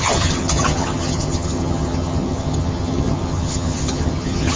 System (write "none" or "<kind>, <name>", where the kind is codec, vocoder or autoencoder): vocoder, HiFi-GAN